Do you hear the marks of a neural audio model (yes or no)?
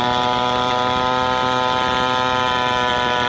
no